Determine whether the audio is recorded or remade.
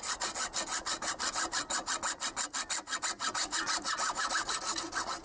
recorded